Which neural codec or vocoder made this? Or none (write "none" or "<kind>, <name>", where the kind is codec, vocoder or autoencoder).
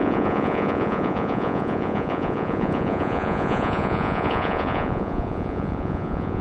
vocoder, Vocos